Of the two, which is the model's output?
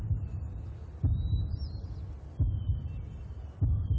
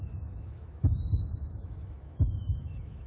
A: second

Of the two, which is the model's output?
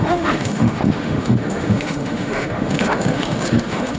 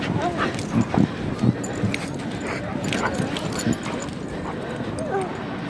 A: first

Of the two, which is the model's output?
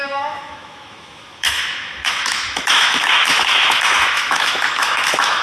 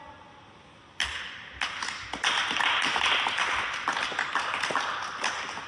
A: first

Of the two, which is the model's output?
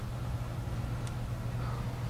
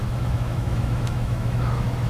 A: second